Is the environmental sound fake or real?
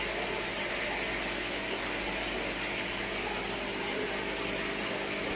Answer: real